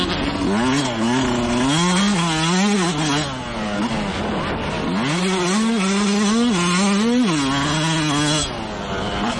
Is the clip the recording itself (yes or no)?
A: yes